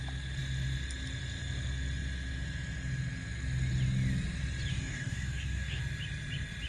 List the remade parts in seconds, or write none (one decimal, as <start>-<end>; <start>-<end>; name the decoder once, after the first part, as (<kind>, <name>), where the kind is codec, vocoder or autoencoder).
4.7-5.8 (codec, DAC)